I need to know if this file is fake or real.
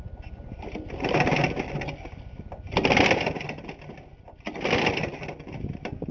real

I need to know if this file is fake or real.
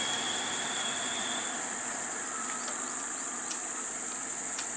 real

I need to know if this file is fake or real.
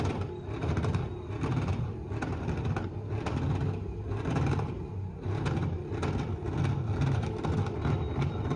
real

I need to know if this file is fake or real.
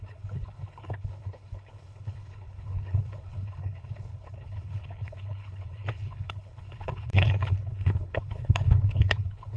fake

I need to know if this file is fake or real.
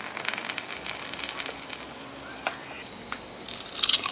real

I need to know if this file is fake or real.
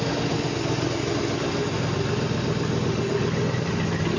real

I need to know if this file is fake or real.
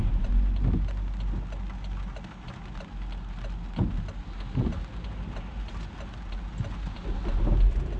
real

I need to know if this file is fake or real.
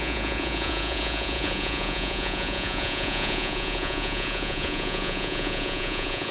fake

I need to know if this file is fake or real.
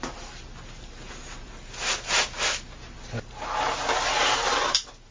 real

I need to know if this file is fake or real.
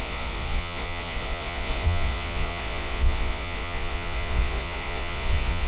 fake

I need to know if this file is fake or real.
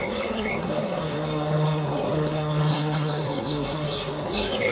fake